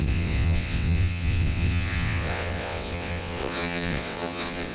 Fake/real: fake